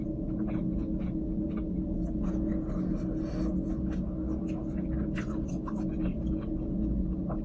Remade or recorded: recorded